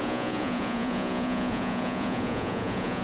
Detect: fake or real fake